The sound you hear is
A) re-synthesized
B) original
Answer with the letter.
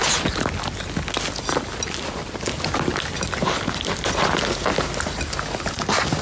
B